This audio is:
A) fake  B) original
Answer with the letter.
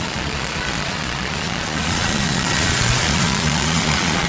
A